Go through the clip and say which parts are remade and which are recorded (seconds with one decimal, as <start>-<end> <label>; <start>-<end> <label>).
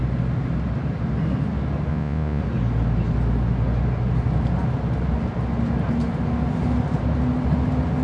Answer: 0.0-1.9 recorded; 1.9-2.4 remade; 2.4-8.0 recorded